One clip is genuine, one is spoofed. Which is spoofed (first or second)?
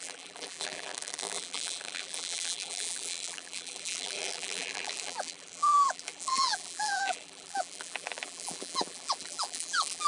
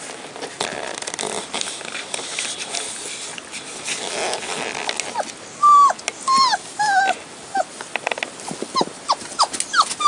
first